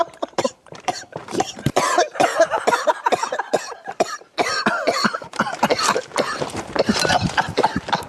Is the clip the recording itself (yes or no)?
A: no